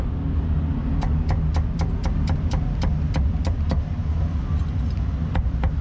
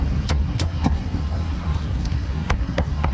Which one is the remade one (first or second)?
second